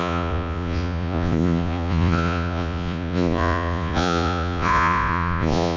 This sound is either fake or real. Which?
fake